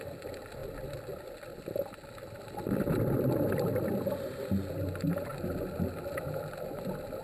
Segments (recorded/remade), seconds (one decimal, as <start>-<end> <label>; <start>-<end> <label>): 0.0-0.6 recorded; 0.6-1.7 remade; 1.7-7.2 recorded

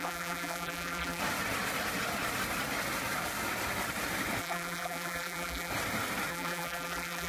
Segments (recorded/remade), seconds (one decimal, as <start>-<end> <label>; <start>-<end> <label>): 0.0-1.2 remade; 1.2-4.4 recorded; 4.4-5.7 remade; 5.7-6.3 recorded; 6.3-7.3 remade

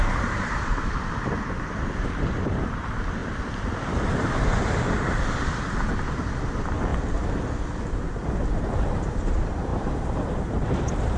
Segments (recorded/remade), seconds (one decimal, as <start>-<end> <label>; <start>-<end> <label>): 0.0-6.9 remade; 6.9-8.5 recorded; 8.5-11.2 remade

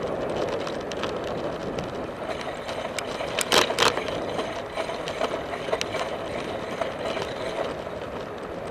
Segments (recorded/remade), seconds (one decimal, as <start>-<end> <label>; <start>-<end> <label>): 0.0-8.7 recorded

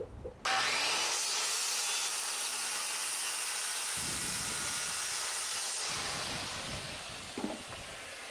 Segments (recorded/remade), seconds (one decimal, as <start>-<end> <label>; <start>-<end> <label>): 0.0-8.3 recorded

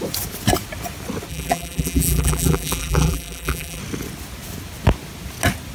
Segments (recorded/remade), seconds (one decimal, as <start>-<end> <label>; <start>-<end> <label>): 0.0-1.3 recorded; 1.3-3.8 remade; 3.8-5.7 recorded

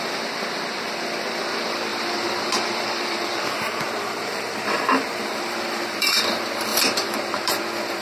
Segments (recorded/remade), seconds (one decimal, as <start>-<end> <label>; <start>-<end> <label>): 0.0-1.9 recorded; 1.9-6.2 remade; 6.2-6.7 recorded; 6.7-7.5 remade; 7.5-8.0 recorded

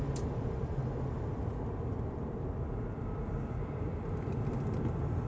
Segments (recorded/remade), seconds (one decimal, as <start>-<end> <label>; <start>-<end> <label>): 0.0-0.8 remade; 0.8-2.3 recorded; 2.3-5.3 remade